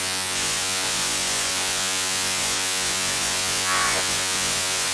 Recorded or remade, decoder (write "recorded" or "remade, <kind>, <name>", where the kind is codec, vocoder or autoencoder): remade, vocoder, Vocos